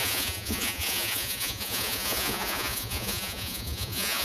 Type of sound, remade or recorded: remade